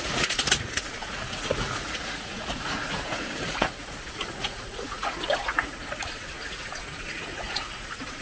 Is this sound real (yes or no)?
no